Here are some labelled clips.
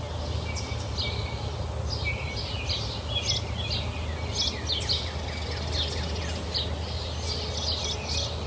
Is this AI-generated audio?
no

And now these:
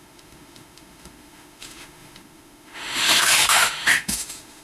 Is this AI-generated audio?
yes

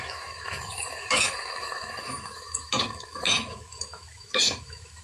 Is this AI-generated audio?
yes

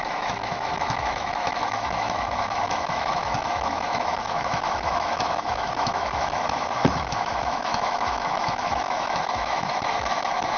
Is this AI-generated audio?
yes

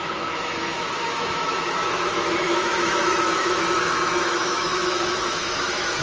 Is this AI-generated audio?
yes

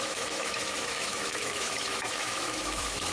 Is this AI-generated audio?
yes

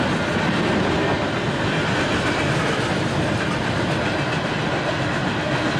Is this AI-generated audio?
no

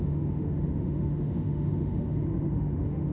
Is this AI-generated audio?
yes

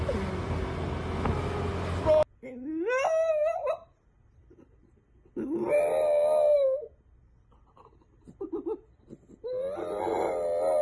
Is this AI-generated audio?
no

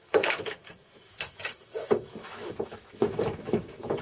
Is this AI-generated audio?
yes